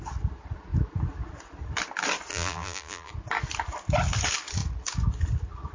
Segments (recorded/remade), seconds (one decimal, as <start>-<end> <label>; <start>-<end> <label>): 0.0-2.3 recorded; 2.3-3.1 remade; 3.1-5.7 recorded